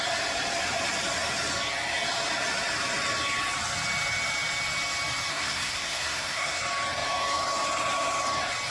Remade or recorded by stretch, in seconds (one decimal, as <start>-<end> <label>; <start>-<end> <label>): 0.0-5.3 recorded; 5.3-6.6 remade; 6.6-8.7 recorded